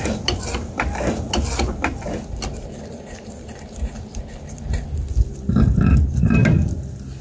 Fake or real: real